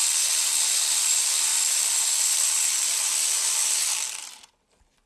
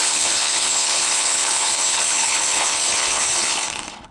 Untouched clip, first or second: first